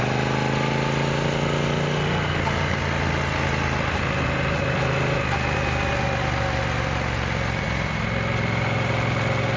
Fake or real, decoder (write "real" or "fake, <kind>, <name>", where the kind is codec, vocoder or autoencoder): real